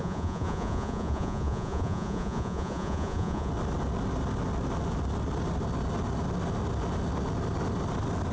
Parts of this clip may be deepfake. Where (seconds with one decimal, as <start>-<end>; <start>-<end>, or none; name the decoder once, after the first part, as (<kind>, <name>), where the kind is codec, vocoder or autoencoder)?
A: 0.0-3.5 (vocoder, Vocos)